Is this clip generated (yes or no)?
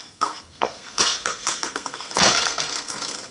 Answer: yes